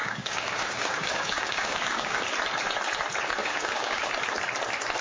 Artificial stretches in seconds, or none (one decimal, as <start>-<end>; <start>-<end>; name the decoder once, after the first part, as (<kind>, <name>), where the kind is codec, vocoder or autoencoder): 0.0-2.2 (codec, DAC); 3.4-4.1